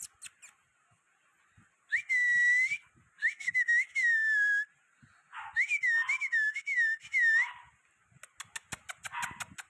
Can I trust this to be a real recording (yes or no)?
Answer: yes